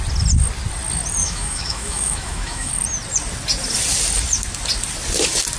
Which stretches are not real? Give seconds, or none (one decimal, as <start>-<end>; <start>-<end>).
1.2-2.7